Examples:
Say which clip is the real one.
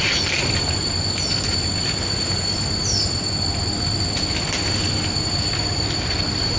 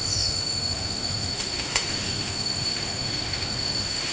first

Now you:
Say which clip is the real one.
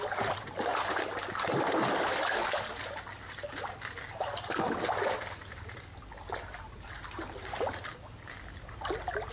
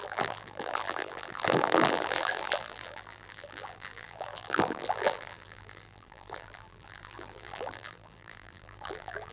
first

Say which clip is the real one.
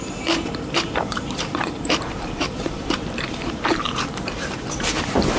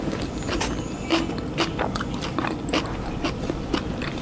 second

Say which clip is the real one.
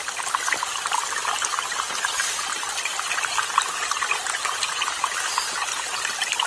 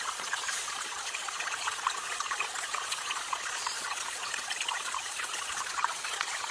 first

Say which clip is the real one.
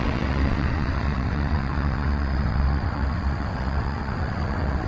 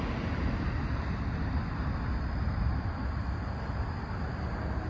second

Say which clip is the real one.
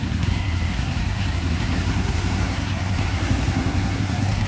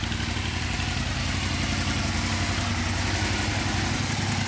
second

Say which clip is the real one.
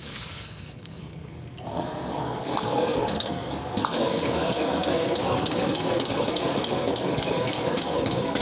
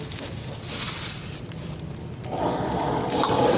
second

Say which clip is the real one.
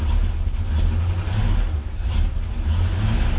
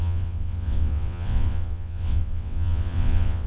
first